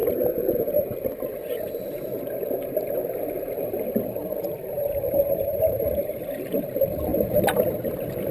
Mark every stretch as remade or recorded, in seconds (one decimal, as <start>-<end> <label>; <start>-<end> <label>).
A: 0.0-4.6 recorded; 4.6-6.3 remade; 6.3-8.3 recorded